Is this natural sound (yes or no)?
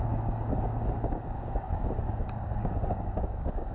no